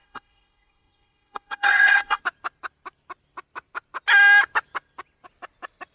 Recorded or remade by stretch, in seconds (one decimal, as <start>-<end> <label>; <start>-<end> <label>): 0.0-2.2 remade; 2.2-5.9 recorded